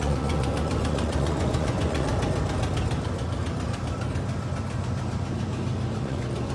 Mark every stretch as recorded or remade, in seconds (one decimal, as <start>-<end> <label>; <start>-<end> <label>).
0.0-2.1 remade; 2.1-6.0 recorded; 6.0-6.5 remade